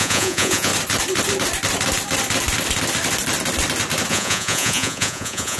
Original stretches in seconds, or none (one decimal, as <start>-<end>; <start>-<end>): 0.7-4.1